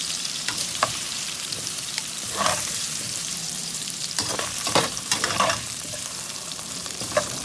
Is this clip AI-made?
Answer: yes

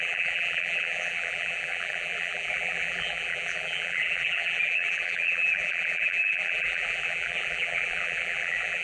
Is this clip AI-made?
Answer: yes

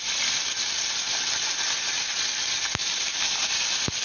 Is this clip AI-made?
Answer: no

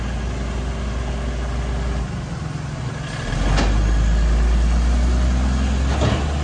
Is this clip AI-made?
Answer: no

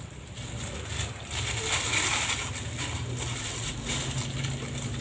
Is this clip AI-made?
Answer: no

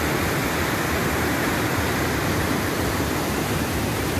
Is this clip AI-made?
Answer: no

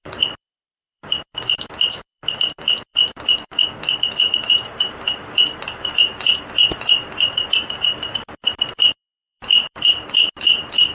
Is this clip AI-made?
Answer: yes